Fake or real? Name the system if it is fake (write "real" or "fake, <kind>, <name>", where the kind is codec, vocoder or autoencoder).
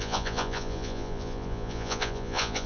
fake, vocoder, Vocos